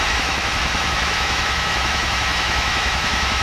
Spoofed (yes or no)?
yes